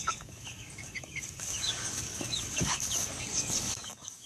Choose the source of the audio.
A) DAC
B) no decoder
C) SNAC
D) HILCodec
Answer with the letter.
A